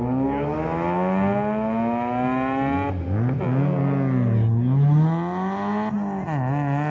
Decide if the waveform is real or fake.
real